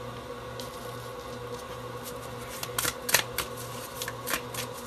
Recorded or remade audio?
recorded